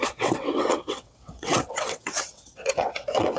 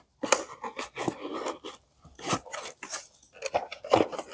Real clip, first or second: second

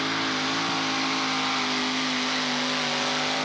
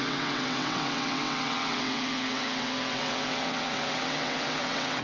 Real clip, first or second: first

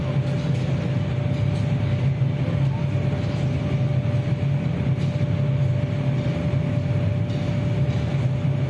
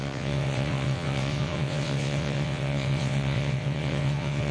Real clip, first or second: first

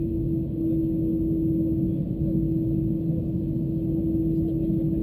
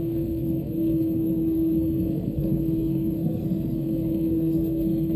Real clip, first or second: first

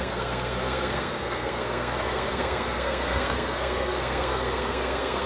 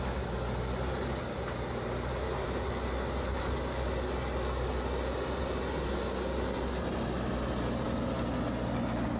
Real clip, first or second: second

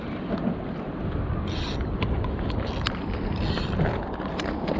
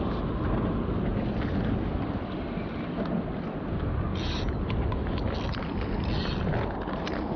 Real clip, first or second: second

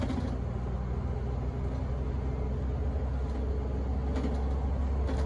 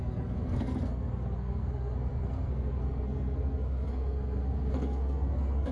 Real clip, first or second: first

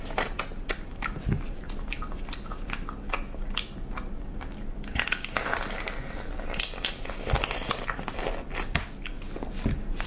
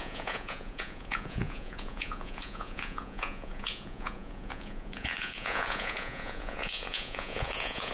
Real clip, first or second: first